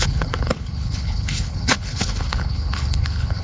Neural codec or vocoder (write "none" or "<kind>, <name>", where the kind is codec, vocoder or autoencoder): codec, HILCodec